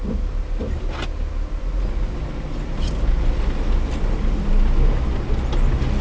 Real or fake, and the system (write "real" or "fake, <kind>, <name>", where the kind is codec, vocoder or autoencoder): real